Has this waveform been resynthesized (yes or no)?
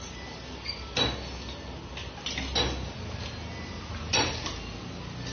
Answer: no